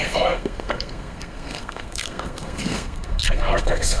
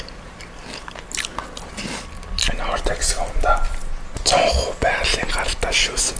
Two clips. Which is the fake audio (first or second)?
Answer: first